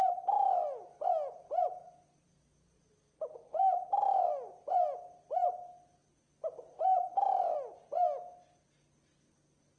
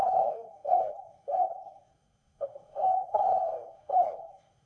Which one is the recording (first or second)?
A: first